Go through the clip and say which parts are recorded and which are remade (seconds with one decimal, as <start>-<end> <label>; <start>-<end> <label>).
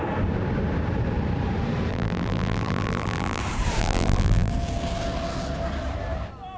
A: 0.0-1.9 recorded; 1.9-3.4 remade; 3.4-3.8 recorded; 3.8-4.5 remade; 4.5-6.6 recorded